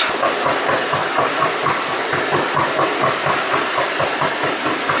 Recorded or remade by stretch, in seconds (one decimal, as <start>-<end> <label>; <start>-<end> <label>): 0.0-5.0 recorded